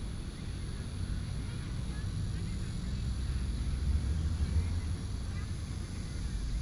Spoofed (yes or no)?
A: no